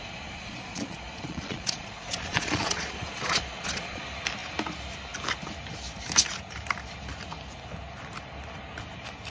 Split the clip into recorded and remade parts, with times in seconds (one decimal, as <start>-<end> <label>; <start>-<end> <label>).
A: 0.0-4.0 remade; 4.0-9.3 recorded